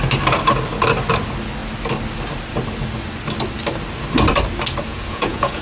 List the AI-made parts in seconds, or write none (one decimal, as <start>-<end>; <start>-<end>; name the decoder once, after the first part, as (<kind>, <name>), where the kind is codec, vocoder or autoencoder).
4.9-5.6 (vocoder, Vocos)